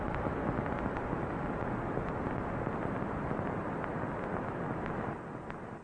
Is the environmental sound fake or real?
real